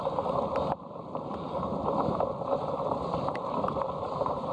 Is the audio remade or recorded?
recorded